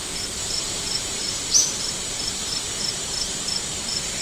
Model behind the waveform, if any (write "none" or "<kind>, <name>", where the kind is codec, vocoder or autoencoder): vocoder, BigVGAN v2